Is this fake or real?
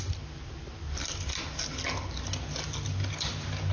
real